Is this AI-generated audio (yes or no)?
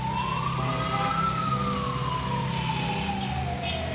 no